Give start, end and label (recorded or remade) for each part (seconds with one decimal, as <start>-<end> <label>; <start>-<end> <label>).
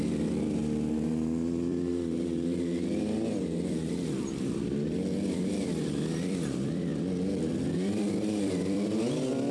0.0-9.5 remade